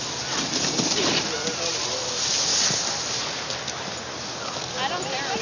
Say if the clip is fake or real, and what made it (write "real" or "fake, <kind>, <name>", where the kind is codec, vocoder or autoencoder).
real